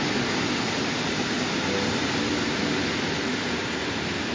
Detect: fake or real real